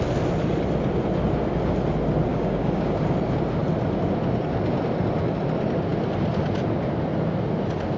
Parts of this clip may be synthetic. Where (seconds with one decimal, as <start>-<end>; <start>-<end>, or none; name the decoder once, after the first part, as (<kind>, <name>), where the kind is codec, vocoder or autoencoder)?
2.3-3.0 (codec, DAC)